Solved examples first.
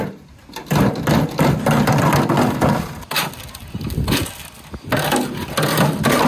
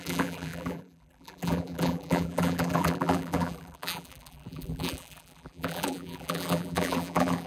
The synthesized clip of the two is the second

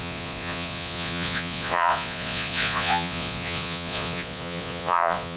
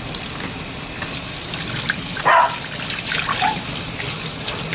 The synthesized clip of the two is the first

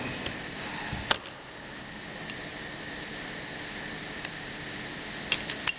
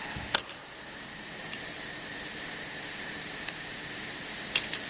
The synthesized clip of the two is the second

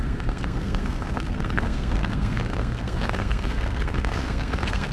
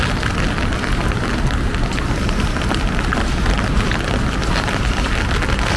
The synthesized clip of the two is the first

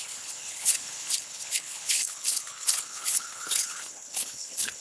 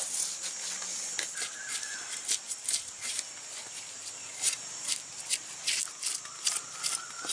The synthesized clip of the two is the first